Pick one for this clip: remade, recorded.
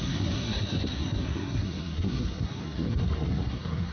remade